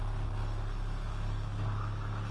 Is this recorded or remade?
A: recorded